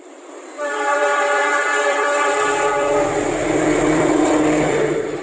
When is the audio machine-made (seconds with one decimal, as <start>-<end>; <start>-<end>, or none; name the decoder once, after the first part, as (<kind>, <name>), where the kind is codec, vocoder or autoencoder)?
0.0-5.2 (vocoder, BigVGAN v2)